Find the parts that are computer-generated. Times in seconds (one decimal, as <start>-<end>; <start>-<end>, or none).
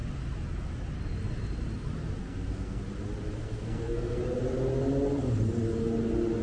2.2-2.8; 3.4-4.2